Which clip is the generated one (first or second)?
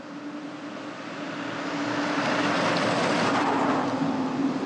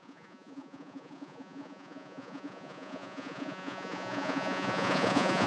second